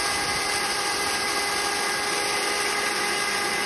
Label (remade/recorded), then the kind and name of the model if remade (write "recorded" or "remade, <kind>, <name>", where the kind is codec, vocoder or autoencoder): recorded